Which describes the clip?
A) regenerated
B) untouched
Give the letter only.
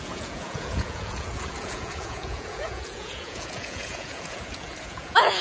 A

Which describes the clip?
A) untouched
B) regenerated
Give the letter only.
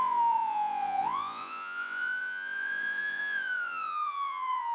B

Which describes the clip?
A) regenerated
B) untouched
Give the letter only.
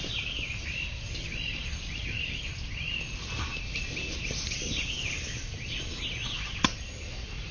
B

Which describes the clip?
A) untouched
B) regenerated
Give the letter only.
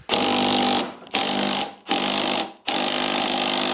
A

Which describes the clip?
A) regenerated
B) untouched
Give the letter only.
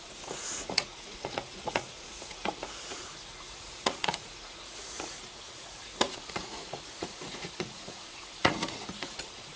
A